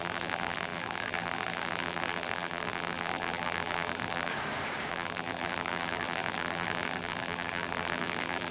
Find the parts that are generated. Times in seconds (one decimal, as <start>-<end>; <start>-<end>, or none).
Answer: 0.0-4.3; 4.9-8.5